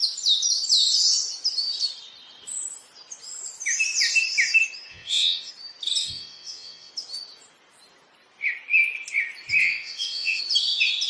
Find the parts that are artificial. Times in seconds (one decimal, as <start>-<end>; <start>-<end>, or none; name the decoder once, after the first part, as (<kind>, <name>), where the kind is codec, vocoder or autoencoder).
4.9-5.5 (vocoder, WaveNeXt); 6.0-6.9; 9.6-10.4